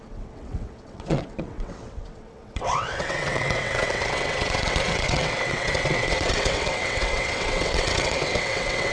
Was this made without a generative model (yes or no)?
no